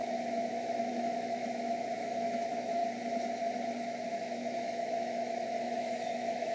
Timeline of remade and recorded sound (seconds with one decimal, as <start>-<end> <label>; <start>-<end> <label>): 0.0-2.8 remade; 2.8-4.1 recorded; 4.1-6.5 remade